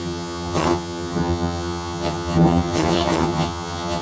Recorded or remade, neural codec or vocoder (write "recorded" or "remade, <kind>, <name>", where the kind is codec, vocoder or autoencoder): remade, vocoder, HiFi-GAN